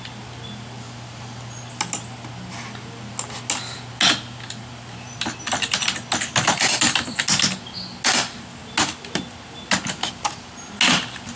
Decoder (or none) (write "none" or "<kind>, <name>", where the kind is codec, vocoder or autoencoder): none